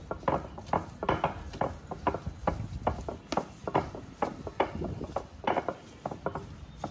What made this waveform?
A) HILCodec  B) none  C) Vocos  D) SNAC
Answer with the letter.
B